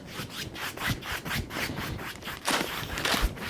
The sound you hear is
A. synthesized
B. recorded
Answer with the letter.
B